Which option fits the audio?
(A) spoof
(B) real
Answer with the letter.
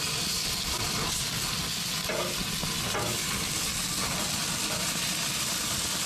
B